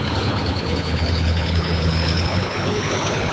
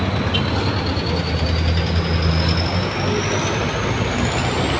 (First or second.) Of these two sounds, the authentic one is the second